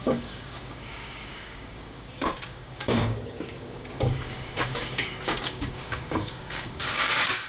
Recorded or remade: remade